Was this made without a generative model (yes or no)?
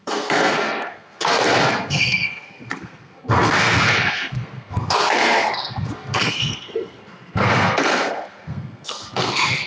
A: no